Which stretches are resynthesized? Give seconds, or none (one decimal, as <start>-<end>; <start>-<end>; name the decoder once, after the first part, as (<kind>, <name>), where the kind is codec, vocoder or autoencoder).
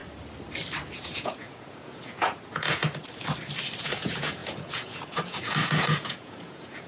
0.8-2.8 (vocoder, Vocos); 3.8-6.9